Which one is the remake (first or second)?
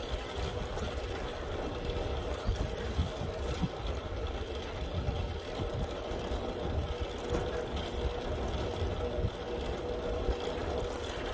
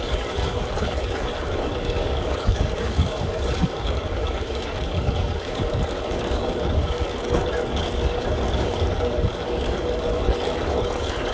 second